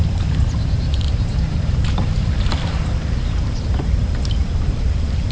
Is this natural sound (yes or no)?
no